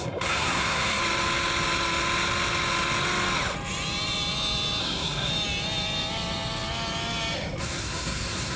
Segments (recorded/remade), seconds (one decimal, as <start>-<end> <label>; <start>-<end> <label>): 0.0-1.0 remade; 1.0-4.8 recorded; 4.8-5.3 remade; 5.3-7.6 recorded; 7.6-8.6 remade